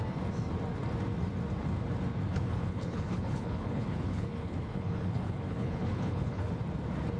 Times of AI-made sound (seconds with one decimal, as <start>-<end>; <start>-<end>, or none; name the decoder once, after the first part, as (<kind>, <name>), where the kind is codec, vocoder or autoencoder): 2.3-6.6 (codec, HILCodec)